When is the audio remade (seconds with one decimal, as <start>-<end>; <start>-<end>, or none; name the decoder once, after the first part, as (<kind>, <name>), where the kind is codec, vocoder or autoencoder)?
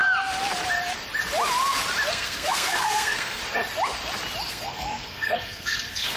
2.1-3.4 (codec, SNAC); 4.5-6.2